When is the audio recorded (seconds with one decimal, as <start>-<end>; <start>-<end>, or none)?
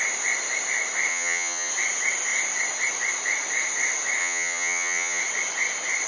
0.0-1.1; 1.7-4.2; 5.2-6.1